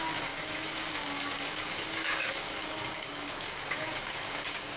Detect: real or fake fake